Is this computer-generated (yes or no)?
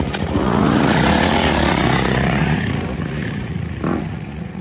yes